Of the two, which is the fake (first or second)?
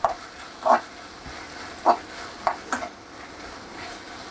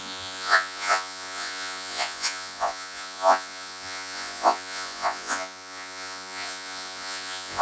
second